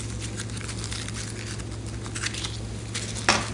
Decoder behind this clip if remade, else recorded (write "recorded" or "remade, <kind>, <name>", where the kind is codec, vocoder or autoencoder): recorded